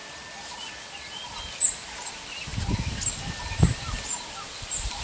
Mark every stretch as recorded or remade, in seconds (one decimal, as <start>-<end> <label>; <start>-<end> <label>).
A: 0.0-4.1 recorded; 4.1-5.0 remade